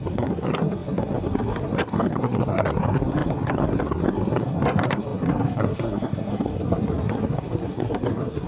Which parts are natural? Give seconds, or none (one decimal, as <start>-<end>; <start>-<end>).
none